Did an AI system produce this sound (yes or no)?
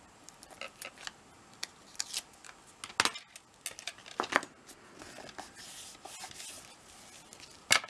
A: no